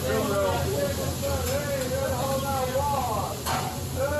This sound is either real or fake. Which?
real